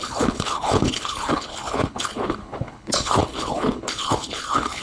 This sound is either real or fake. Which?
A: fake